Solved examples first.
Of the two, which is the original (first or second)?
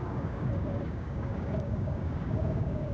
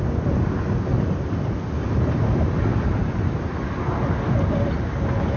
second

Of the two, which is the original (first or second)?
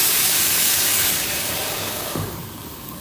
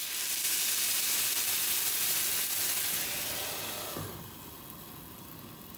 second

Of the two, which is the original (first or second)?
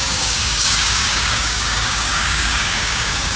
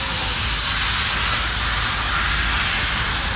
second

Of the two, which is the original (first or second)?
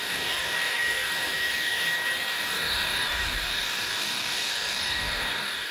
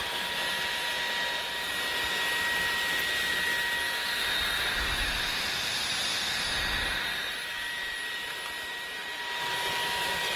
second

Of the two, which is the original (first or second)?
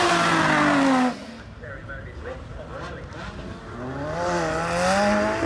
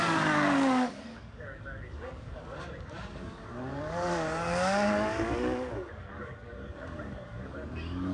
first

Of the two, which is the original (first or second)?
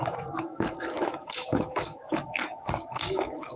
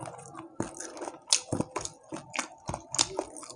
second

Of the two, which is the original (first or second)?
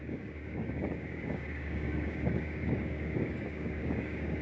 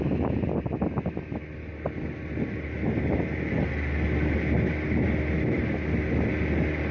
second